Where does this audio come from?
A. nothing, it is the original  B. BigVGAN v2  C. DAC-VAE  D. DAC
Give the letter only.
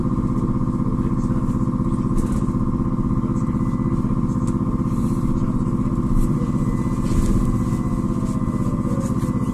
A